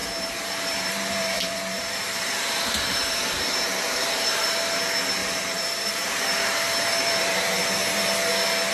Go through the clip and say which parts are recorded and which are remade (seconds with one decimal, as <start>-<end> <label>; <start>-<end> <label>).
0.0-4.8 remade; 4.8-5.2 recorded; 5.2-7.6 remade; 7.6-8.7 recorded